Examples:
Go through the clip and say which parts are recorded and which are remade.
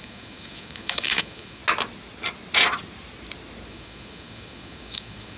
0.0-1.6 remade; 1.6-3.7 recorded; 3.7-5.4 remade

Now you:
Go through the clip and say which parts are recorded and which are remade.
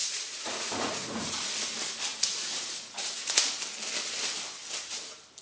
0.0-1.5 remade; 1.5-2.1 recorded; 2.1-3.5 remade; 3.5-5.4 recorded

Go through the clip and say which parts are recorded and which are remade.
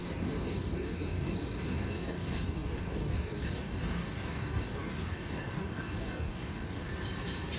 0.0-6.9 remade; 6.9-7.6 recorded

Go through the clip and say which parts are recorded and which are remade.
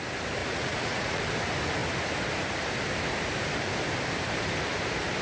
0.0-0.4 recorded; 0.4-1.2 remade; 1.2-5.2 recorded